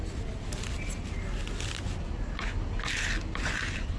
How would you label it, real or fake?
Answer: real